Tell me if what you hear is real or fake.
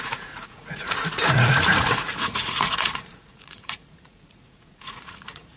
fake